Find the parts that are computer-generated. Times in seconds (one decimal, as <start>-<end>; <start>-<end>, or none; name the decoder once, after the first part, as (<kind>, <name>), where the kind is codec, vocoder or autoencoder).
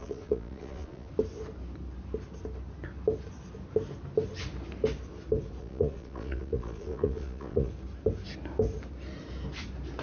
0.0-1.1 (vocoder, Vocos); 5.6-7.7